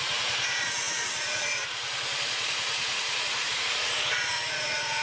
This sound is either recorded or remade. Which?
remade